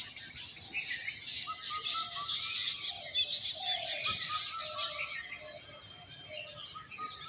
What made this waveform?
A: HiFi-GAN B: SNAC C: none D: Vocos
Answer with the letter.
C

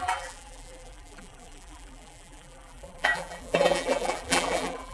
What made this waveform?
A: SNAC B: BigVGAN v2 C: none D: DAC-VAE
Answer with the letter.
B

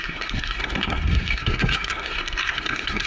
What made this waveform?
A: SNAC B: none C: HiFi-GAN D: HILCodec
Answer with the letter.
A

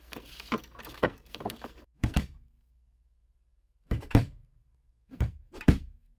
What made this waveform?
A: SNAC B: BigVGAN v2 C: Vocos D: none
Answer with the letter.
A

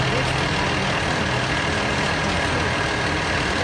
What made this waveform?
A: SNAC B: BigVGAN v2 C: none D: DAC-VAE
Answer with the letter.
C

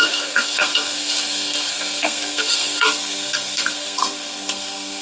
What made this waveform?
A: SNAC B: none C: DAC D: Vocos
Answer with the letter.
A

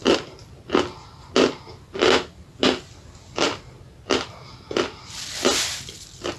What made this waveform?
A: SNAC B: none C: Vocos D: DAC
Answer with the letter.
B